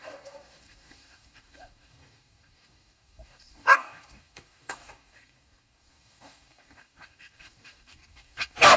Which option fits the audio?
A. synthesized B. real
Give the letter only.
A